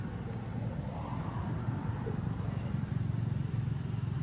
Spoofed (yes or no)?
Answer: no